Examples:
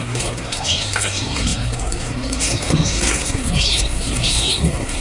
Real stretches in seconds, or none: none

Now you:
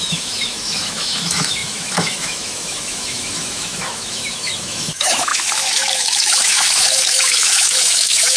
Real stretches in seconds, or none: none

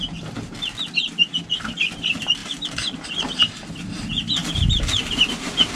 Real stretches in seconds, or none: 0.0-5.8

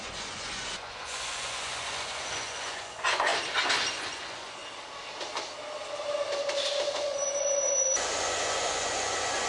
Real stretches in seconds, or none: 3.3-3.9; 4.6-6.9

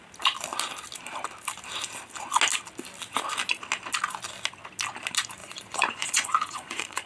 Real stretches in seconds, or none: 0.0-5.4

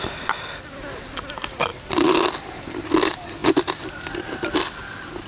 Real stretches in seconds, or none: 0.0-5.3